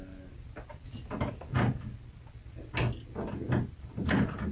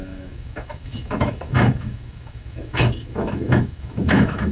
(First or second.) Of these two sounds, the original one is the first